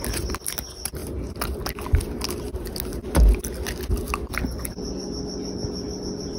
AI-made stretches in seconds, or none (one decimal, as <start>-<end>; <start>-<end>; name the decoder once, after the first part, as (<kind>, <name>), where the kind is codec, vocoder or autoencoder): none